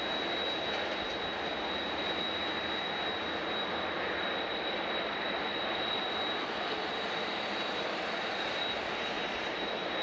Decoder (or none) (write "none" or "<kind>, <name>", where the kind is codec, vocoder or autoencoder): none